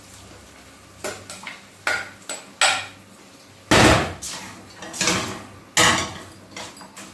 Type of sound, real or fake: real